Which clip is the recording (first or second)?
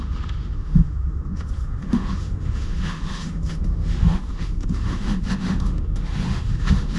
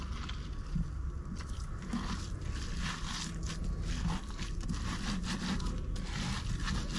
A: second